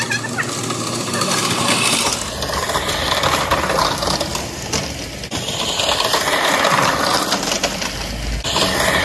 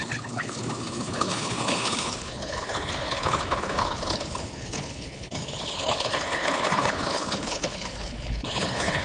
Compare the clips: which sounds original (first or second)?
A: first